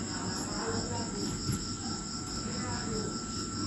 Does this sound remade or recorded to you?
recorded